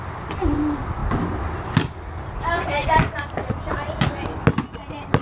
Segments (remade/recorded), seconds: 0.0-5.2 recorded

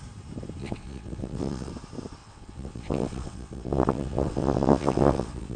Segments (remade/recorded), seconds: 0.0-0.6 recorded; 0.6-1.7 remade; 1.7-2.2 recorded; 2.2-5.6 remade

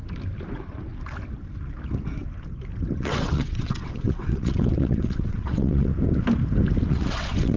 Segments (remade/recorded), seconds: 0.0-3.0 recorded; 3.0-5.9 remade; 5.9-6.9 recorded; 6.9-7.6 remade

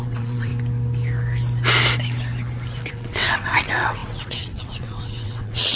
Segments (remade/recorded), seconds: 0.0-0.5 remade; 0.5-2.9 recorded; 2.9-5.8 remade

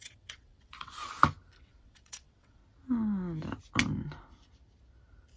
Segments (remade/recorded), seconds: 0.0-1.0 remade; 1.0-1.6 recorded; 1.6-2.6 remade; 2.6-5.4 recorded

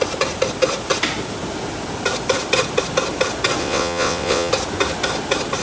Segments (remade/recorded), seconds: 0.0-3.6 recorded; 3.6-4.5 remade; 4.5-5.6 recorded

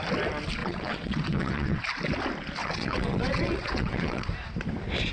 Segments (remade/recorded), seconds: 0.0-0.6 recorded; 0.6-1.8 remade; 1.8-2.6 recorded; 2.6-4.3 remade; 4.3-5.1 recorded

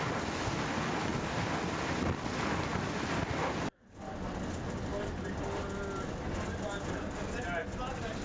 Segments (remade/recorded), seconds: 0.0-8.2 recorded